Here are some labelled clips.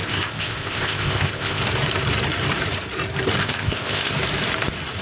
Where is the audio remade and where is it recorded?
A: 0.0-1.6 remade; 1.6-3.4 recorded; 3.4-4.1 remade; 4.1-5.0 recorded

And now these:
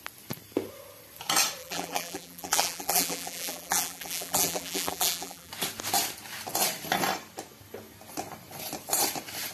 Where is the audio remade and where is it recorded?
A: 0.0-1.6 recorded; 1.6-5.5 remade; 5.5-9.5 recorded

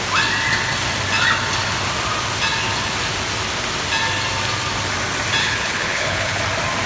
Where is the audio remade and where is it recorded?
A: 0.0-5.4 recorded; 5.4-6.4 remade; 6.4-6.9 recorded

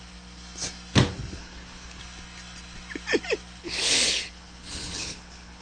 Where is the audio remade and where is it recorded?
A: 0.0-1.4 recorded; 1.4-2.0 remade; 2.0-3.6 recorded; 3.6-5.6 remade

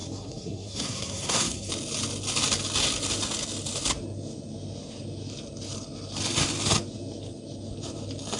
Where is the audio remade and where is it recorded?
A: 0.0-1.7 remade; 1.7-8.4 recorded